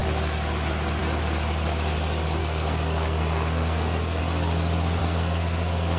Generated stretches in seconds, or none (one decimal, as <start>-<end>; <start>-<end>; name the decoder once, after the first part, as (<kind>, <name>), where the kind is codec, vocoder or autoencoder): 2.4-4.2 (codec, SNAC); 5.0-6.0